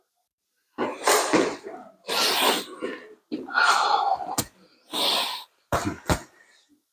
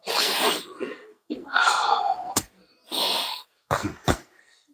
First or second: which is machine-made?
second